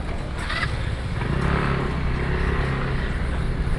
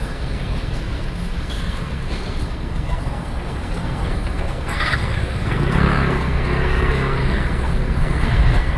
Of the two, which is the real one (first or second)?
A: first